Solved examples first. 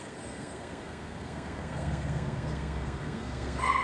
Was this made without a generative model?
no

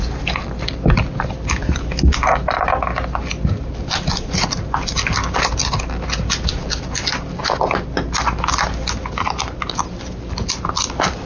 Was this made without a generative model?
yes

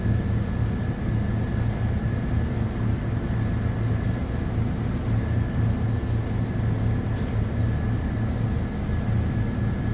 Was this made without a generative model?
yes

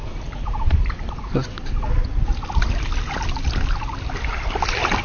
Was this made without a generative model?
yes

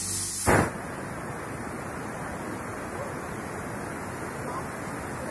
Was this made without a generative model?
yes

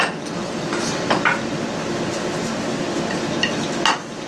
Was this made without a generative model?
yes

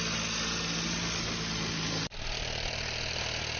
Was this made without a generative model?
yes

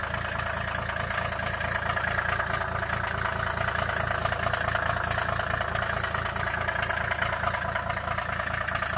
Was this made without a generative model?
yes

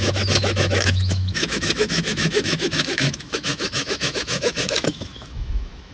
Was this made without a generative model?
no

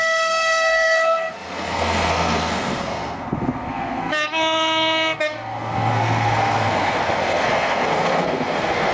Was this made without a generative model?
no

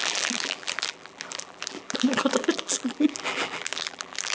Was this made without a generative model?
no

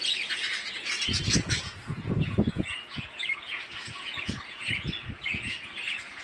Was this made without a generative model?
no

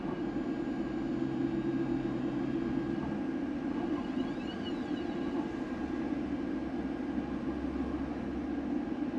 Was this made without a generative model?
yes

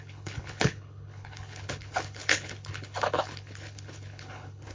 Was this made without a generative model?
no